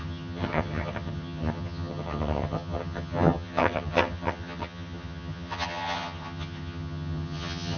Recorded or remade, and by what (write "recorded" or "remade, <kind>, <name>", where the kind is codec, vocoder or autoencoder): remade, vocoder, HiFi-GAN